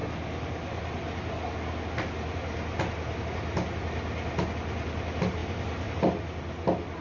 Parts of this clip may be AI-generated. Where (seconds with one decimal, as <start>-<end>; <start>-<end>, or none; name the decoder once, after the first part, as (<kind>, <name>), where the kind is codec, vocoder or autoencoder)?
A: 5.4-6.2 (vocoder, BigVGAN v2)